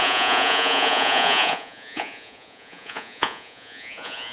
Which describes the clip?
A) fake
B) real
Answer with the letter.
A